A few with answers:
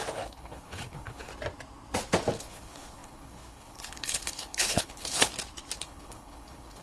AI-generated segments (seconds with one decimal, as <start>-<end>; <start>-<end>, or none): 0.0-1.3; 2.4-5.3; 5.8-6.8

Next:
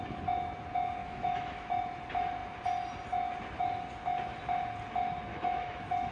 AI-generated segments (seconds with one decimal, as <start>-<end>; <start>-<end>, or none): 1.0-1.8; 5.3-6.1

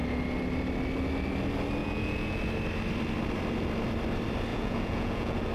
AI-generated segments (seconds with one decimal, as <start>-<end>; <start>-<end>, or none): 1.8-2.4; 4.5-5.5

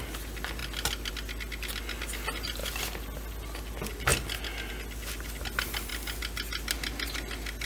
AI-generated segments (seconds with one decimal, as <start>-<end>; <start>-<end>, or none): none

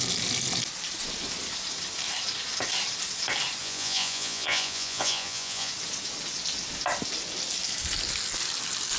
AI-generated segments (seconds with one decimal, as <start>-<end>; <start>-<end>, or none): 3.6-5.7

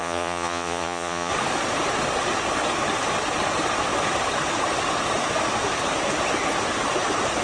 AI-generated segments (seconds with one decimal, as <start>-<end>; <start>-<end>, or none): 0.0-1.3